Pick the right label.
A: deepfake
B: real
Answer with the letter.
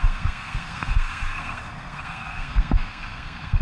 A